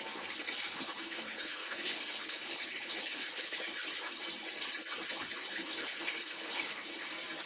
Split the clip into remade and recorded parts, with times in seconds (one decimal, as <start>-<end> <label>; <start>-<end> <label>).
0.0-0.7 recorded; 0.7-3.6 remade; 3.6-5.4 recorded; 5.4-7.1 remade; 7.1-7.5 recorded